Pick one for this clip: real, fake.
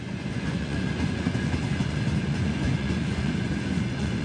fake